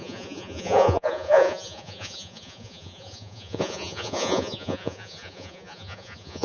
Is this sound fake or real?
fake